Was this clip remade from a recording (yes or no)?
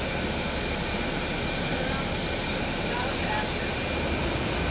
no